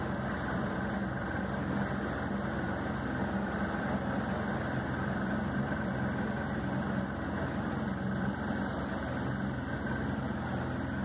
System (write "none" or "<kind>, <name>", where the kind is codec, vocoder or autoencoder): none